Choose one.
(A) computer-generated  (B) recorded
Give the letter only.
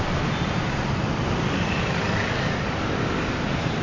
A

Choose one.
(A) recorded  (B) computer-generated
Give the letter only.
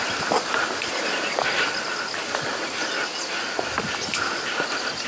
A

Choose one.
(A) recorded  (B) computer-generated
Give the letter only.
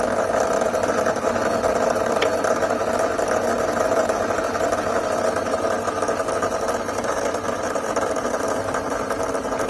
A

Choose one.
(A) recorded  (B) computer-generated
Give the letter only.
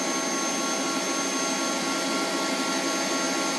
A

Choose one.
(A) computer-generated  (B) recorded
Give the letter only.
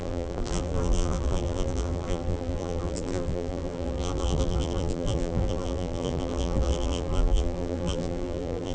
A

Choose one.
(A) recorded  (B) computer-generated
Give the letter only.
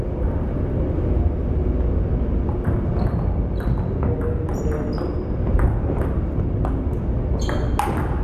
A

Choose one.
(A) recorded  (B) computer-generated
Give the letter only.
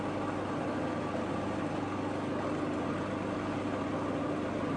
A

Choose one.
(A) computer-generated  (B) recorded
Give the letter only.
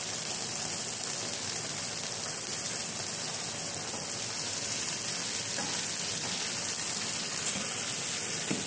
B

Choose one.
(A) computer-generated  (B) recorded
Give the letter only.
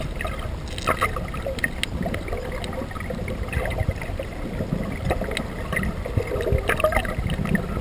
B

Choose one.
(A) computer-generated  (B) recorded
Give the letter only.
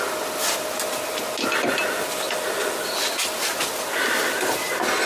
B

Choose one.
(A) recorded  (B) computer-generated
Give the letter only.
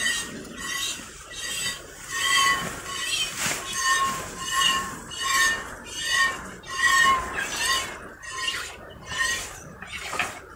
B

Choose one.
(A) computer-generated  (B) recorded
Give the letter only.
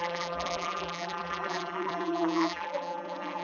A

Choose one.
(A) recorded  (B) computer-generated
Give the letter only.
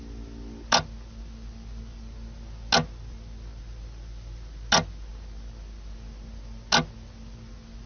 A